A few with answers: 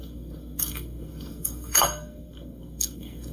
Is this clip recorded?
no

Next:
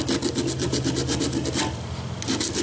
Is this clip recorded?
yes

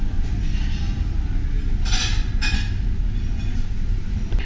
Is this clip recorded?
yes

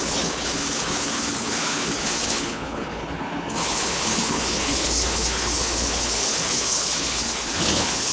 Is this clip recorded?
no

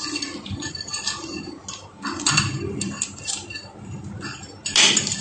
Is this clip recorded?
yes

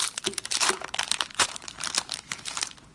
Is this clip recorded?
no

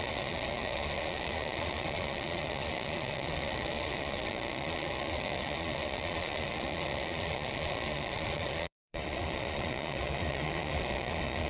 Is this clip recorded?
no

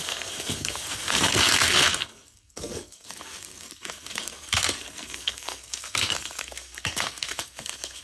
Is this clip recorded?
no